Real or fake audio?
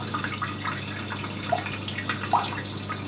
real